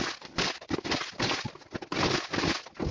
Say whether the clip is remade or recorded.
recorded